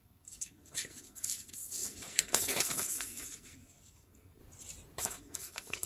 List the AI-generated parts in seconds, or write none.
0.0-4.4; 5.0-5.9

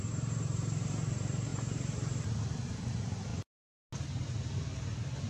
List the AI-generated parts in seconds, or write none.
0.0-3.3

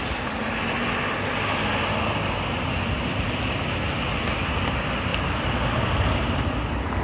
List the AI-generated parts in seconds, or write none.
none

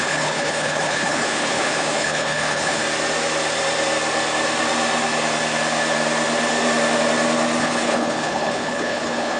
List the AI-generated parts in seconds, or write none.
0.0-2.8; 7.6-9.4

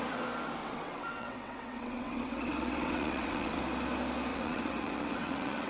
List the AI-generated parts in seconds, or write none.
0.6-3.6; 4.3-5.7

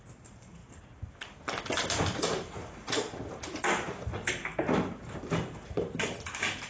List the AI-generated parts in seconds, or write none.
none

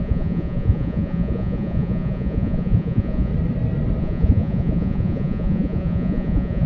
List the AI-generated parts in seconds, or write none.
0.0-3.3; 4.0-6.7